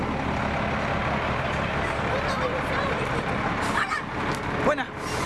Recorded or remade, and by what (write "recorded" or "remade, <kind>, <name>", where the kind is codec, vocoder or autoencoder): recorded